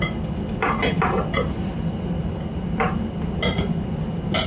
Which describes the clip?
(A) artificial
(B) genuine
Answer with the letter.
B